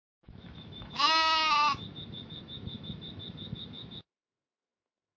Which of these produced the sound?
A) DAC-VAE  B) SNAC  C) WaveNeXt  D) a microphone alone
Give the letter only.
A